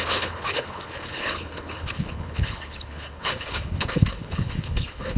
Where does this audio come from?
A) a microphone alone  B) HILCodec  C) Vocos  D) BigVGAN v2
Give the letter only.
B